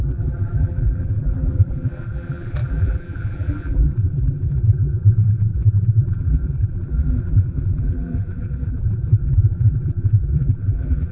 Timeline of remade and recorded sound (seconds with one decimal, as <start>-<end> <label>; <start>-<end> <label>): 0.0-11.1 remade